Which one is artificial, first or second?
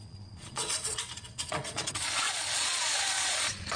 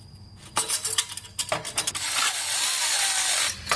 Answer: first